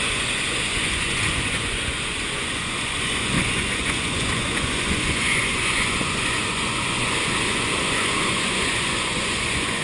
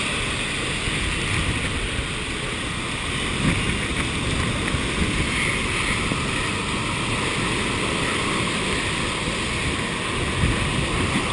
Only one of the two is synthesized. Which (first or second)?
first